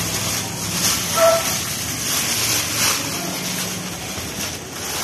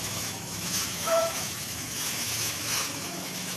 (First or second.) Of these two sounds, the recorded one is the first